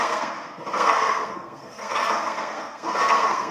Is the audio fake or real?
fake